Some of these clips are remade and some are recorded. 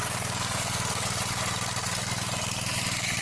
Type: remade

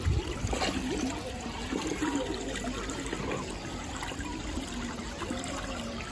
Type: recorded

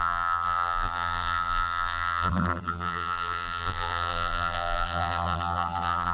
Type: remade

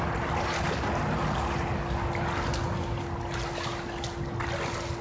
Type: recorded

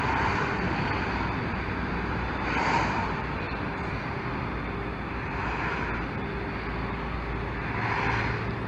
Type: recorded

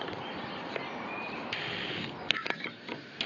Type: recorded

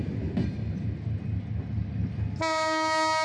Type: recorded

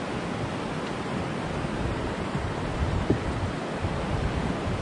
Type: recorded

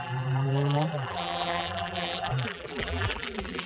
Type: remade